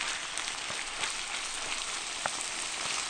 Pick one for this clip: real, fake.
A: real